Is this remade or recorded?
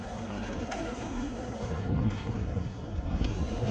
remade